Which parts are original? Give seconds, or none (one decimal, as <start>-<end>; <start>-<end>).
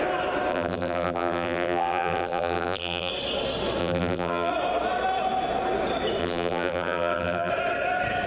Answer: 0.0-0.5; 3.1-3.8; 4.5-6.2; 7.5-8.3